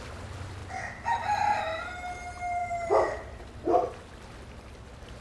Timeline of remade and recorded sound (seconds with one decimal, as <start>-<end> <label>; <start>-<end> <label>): 0.0-2.6 recorded; 2.6-3.9 remade; 3.9-5.2 recorded